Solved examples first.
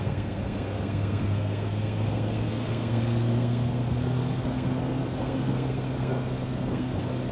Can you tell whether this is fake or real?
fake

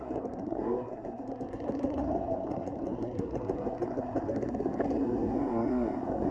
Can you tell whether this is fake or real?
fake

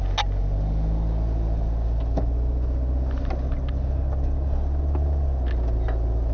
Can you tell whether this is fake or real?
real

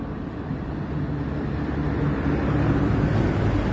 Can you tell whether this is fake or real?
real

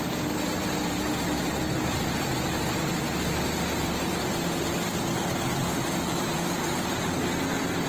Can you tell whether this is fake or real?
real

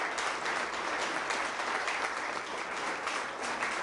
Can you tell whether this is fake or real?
real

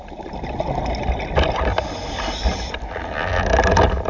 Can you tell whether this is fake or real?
real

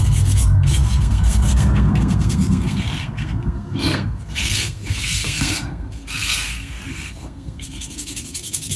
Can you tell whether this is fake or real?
fake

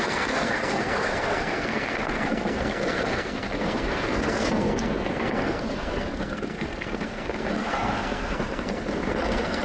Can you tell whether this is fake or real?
fake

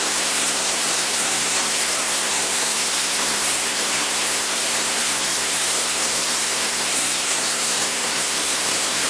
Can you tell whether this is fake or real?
fake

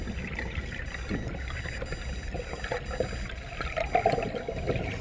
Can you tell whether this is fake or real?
real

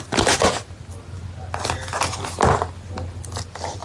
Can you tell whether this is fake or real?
real